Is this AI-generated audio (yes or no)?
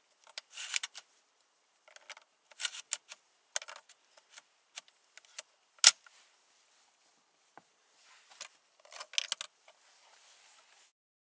no